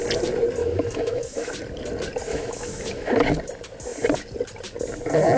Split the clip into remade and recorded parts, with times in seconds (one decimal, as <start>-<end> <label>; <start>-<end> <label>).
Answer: 0.0-0.6 recorded; 0.6-1.5 remade; 1.5-2.3 recorded; 2.3-3.2 remade; 3.2-5.4 recorded